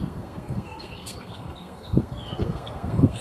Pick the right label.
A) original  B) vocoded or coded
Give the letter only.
B